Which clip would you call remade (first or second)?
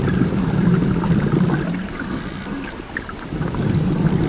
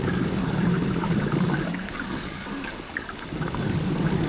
second